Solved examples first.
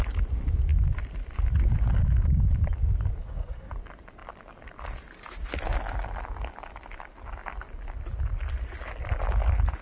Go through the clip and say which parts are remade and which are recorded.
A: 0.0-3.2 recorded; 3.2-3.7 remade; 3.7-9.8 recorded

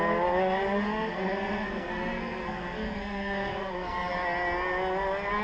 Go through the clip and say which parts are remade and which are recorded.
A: 0.0-0.9 recorded; 0.9-4.1 remade; 4.1-5.4 recorded

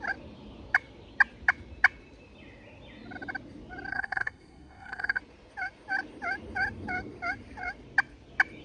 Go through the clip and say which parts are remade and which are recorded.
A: 0.0-3.9 recorded; 3.9-5.2 remade; 5.2-8.6 recorded